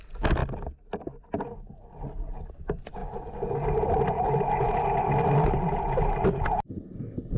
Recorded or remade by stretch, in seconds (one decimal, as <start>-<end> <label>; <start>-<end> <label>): 0.0-7.4 recorded